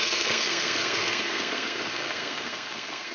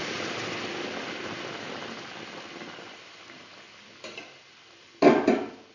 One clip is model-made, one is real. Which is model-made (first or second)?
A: first